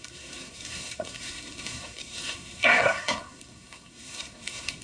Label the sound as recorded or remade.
remade